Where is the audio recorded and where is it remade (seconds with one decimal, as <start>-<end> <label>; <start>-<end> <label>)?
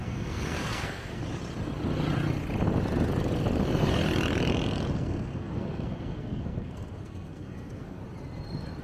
0.0-1.2 remade; 1.2-4.9 recorded; 4.9-8.0 remade; 8.0-8.8 recorded